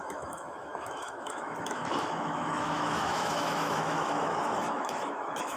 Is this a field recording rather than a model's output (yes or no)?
no